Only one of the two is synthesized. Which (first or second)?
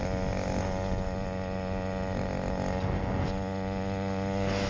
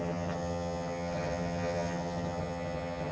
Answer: second